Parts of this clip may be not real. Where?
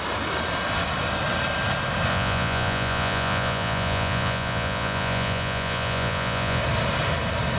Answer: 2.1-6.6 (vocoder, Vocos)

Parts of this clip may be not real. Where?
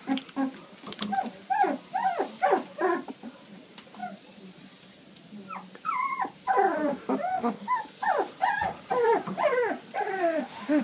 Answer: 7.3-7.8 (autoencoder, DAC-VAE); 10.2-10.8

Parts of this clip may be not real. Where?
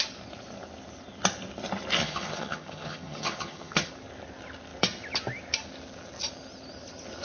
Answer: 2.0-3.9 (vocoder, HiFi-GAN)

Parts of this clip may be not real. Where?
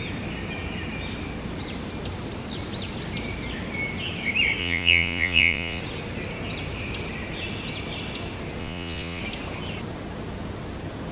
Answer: 4.6-5.8 (vocoder, Vocos); 8.6-9.2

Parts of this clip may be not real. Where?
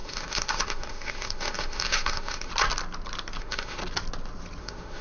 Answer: 0.0-2.5 (autoencoder, DAC-VAE); 3.4-3.8; 4.6-5.0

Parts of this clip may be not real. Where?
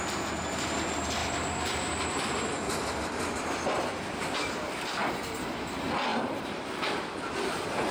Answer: 1.2-5.1 (vocoder, BigVGAN v2); 6.1-7.5